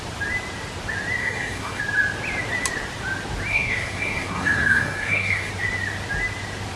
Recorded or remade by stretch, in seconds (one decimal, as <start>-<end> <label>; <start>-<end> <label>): 0.0-1.2 recorded; 1.2-1.8 remade; 1.8-3.5 recorded; 3.5-5.5 remade; 5.5-6.8 recorded